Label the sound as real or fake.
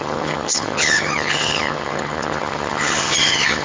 fake